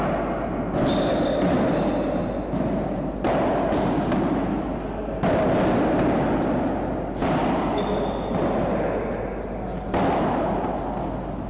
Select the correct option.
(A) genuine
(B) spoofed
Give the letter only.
A